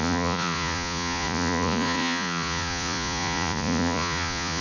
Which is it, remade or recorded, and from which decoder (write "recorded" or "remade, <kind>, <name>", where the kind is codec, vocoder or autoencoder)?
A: remade, vocoder, Vocos